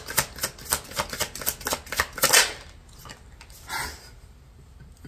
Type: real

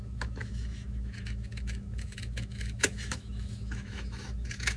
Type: fake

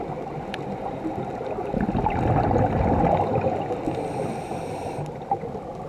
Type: real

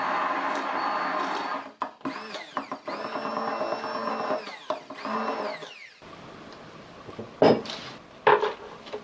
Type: real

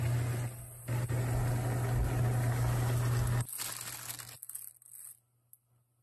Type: real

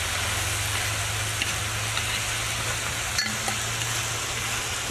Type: real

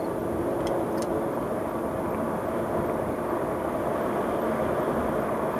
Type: real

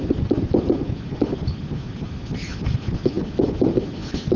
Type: real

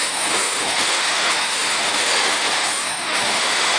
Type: fake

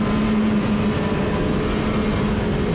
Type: real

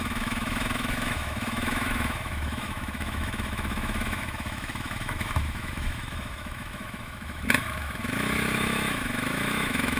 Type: fake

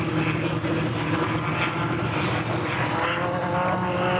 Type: real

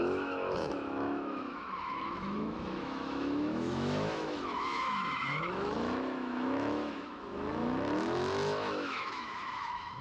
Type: fake